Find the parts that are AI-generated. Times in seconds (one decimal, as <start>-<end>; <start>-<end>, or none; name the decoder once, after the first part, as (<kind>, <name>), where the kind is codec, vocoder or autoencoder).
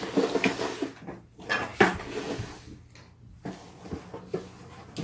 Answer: none